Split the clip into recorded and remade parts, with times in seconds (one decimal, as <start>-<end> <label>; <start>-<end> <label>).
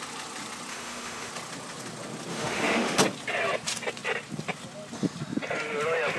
0.0-0.7 recorded; 0.7-1.3 remade; 1.3-2.3 recorded; 2.3-3.0 remade; 3.0-6.2 recorded